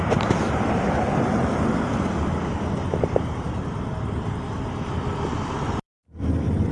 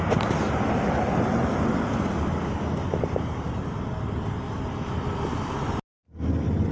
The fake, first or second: first